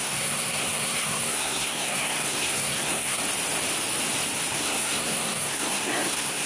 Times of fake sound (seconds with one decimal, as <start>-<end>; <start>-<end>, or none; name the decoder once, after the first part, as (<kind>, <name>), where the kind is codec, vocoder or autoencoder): 0.0-3.2 (codec, SNAC); 4.5-6.5